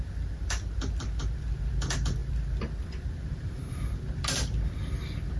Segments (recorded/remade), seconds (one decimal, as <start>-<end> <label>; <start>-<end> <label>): 0.0-5.4 remade